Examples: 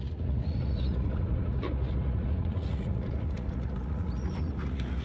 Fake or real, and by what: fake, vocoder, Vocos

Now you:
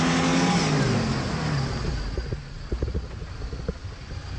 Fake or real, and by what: real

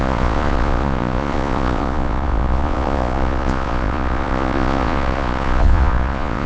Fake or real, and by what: fake, vocoder, Vocos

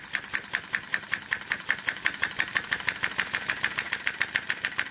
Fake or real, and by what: real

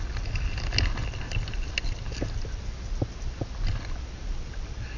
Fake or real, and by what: real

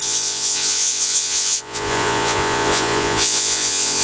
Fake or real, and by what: fake, vocoder, Vocos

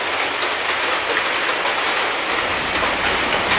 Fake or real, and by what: real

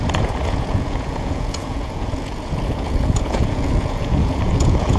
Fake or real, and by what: fake, vocoder, Vocos